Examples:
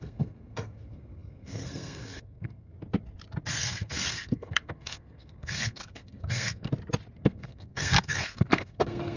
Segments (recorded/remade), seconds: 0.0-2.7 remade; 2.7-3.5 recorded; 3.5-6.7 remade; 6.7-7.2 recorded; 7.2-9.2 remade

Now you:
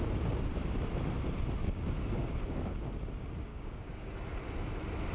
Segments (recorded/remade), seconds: 0.0-1.6 recorded; 1.6-2.3 remade; 2.3-3.5 recorded; 3.5-4.1 remade; 4.1-5.1 recorded

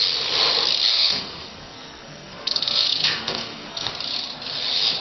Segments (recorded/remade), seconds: 0.0-0.9 recorded; 0.9-3.9 remade; 3.9-5.0 recorded

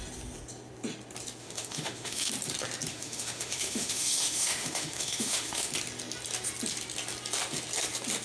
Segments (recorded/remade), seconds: 0.0-1.4 recorded; 1.4-2.3 remade; 2.3-2.9 recorded; 2.9-5.7 remade; 5.7-8.2 recorded